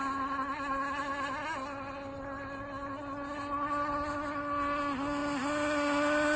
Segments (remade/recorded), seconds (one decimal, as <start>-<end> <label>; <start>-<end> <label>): 0.0-6.4 recorded